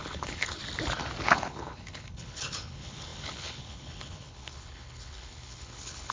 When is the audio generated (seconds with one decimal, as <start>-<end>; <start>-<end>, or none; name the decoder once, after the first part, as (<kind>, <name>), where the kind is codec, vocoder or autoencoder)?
0.0-0.6 (codec, HILCodec); 1.2-6.1